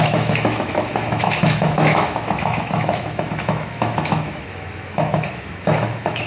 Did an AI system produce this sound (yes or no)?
yes